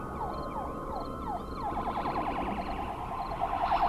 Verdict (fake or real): fake